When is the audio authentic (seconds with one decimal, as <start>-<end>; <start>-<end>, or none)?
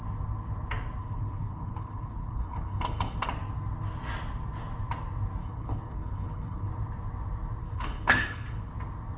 0.0-1.0; 3.3-5.4; 6.7-7.6; 8.7-9.2